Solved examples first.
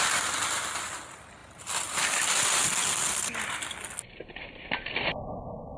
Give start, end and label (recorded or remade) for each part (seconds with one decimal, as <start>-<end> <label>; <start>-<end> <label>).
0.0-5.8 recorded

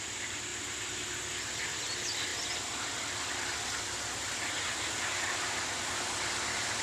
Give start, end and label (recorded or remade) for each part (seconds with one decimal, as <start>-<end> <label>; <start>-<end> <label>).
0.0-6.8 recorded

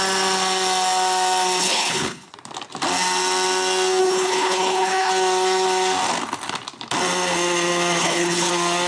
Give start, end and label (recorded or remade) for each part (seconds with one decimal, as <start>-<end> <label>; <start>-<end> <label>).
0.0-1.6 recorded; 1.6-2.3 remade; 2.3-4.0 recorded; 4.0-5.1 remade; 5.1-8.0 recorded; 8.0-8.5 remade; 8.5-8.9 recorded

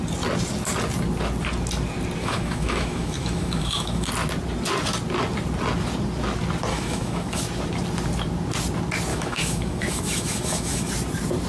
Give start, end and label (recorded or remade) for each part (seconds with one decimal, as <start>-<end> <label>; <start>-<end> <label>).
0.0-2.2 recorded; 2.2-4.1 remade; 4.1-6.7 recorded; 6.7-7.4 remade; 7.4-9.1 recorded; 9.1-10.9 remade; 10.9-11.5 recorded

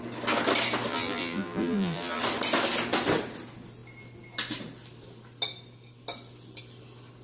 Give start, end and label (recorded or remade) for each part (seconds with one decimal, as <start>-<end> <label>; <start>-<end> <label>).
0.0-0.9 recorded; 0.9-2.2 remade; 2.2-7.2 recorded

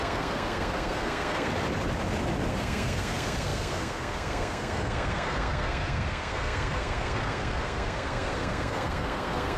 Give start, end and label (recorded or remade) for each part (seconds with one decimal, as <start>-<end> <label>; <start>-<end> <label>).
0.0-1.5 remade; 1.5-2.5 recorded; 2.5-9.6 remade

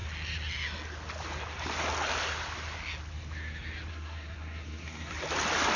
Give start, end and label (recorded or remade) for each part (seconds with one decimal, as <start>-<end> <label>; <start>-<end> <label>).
0.0-3.9 recorded; 3.9-5.1 remade; 5.1-5.8 recorded

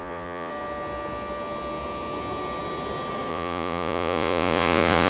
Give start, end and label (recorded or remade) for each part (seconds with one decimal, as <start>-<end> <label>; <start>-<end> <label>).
0.0-0.5 remade; 0.5-3.3 recorded; 3.3-5.1 remade